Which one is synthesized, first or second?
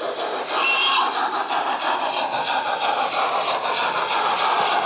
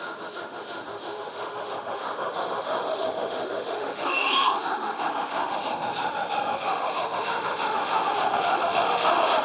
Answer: second